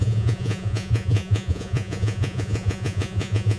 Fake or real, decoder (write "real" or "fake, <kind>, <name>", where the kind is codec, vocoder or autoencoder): fake, vocoder, Vocos